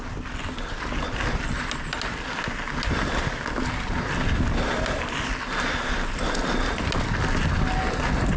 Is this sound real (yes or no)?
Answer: yes